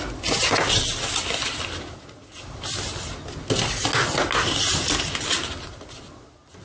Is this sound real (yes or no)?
yes